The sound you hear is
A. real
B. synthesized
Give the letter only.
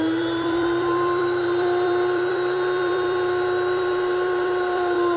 B